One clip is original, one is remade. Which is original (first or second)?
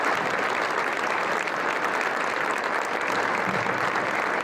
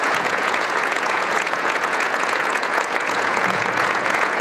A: first